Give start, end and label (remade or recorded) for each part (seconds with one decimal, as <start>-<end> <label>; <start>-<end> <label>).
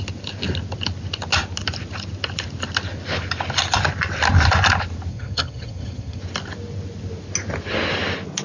0.0-5.1 recorded; 5.1-6.2 remade; 6.2-8.4 recorded